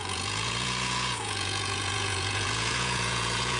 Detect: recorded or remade remade